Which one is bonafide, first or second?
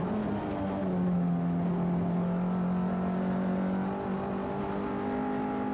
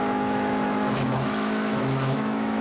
first